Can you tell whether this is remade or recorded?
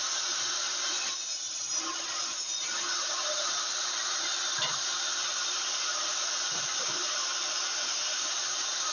recorded